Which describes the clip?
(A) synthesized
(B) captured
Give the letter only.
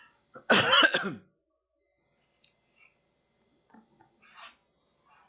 B